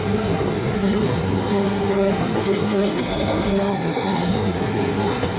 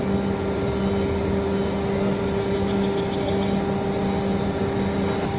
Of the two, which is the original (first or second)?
second